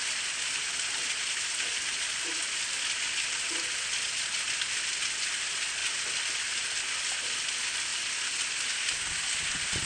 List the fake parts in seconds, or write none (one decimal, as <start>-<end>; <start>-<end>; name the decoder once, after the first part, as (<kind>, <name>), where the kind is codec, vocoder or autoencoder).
none